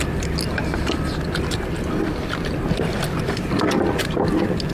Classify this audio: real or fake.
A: real